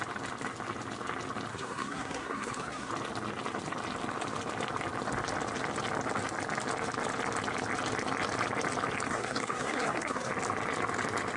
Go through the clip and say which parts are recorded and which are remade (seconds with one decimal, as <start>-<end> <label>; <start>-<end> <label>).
0.0-1.5 recorded; 1.5-2.9 remade; 2.9-9.1 recorded; 9.1-10.3 remade; 10.3-11.4 recorded